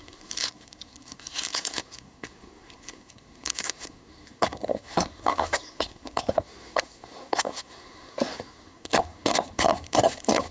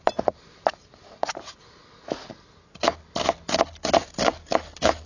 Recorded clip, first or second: second